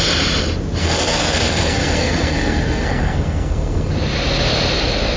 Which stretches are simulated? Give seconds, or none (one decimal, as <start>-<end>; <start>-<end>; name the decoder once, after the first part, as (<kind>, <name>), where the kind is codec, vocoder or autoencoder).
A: 0.8-3.9 (codec, SNAC)